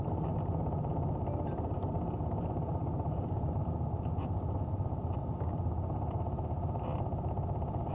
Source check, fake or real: real